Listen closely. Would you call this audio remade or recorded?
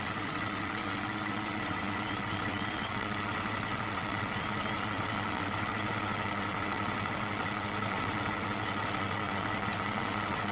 remade